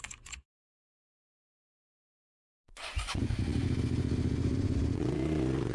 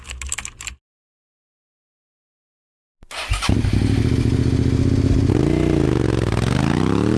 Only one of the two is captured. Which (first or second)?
second